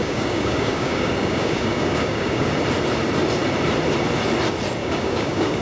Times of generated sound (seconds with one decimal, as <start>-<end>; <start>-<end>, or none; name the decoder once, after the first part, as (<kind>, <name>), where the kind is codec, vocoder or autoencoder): 0.0-2.5 (codec, DAC); 4.8-5.6